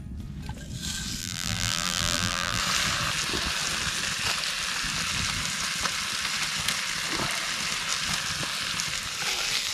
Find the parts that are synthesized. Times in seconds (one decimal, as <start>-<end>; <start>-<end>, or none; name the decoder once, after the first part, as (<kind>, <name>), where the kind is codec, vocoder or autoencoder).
1.2-2.6 (vocoder, BigVGAN v2)